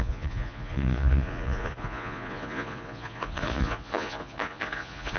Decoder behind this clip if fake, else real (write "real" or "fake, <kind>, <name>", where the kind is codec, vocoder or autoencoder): fake, vocoder, Vocos